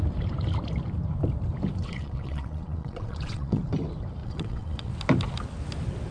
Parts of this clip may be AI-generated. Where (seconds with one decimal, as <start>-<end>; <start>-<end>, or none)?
1.8-3.6; 4.2-4.9